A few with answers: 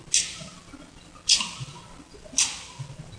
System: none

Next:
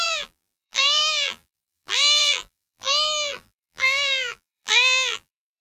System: vocoder, BigVGAN v2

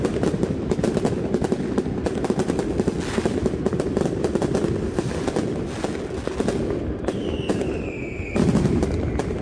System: none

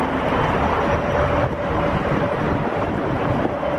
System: vocoder, BigVGAN v2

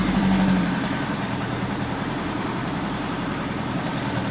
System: vocoder, BigVGAN v2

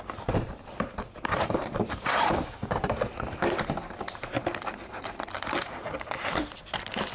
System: vocoder, BigVGAN v2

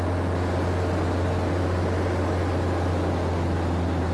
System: none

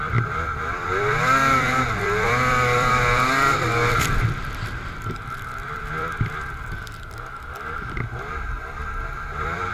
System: vocoder, BigVGAN v2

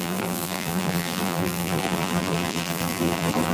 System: vocoder, BigVGAN v2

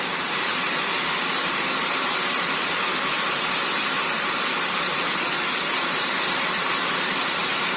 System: vocoder, BigVGAN v2